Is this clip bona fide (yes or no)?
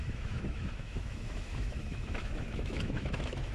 no